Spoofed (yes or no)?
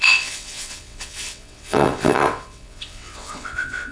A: yes